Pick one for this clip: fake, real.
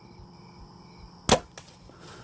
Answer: real